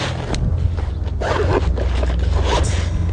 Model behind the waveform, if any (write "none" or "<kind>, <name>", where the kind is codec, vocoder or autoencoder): none